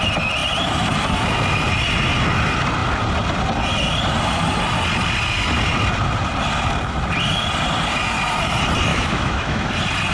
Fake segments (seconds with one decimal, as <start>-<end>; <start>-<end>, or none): 8.9-9.7